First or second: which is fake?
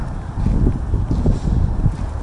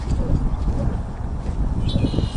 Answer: second